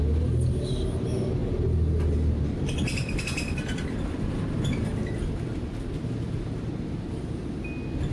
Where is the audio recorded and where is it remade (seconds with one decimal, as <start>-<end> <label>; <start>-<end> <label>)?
0.0-8.1 recorded